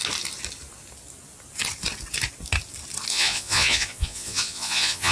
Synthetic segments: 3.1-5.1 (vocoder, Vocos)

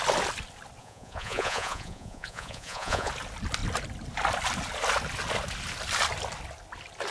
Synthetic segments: 0.8-3.1 (vocoder, Vocos)

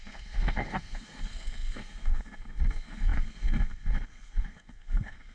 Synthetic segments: 0.0-5.3 (codec, SNAC)

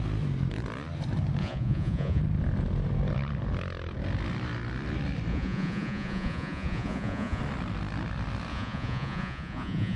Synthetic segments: 1.4-2.2 (vocoder, Vocos); 5.3-7.4; 8.5-10.0

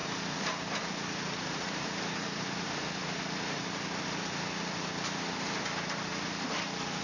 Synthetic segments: 0.0-3.2 (vocoder, BigVGAN v2)